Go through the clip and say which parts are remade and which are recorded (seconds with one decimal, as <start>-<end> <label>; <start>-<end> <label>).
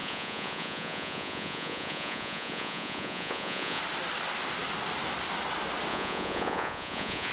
0.0-3.8 remade; 3.8-5.9 recorded; 5.9-7.3 remade